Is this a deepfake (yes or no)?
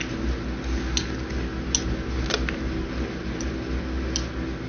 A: no